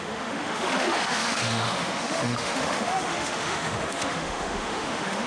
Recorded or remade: remade